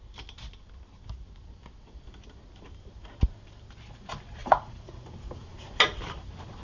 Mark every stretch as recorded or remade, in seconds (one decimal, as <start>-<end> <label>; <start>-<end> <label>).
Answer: 0.0-4.4 recorded; 4.4-5.0 remade; 5.0-6.6 recorded